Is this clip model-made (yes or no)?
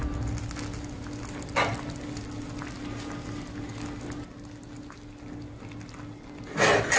no